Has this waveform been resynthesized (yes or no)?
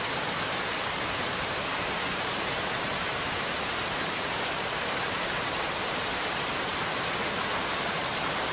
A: yes